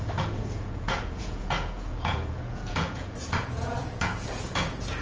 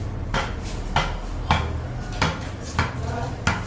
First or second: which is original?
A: second